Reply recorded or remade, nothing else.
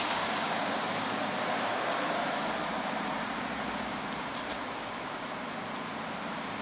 remade